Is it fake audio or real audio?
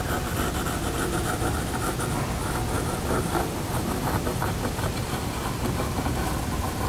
real